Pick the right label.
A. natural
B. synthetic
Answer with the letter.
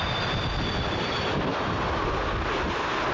A